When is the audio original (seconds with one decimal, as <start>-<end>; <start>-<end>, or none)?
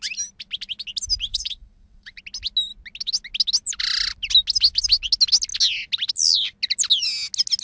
0.0-1.3; 2.2-7.6